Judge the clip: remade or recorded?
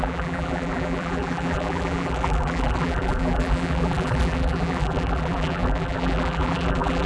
remade